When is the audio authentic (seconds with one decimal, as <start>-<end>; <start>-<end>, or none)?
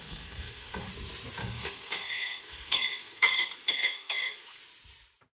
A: 0.9-1.4; 4.6-5.4